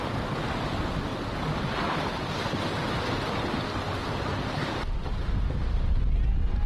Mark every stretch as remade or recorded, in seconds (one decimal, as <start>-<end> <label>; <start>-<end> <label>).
0.0-5.6 recorded; 5.6-6.7 remade